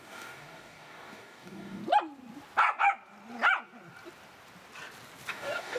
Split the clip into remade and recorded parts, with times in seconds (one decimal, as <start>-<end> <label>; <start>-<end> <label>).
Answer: 0.0-1.8 remade; 1.8-5.3 recorded; 5.3-5.8 remade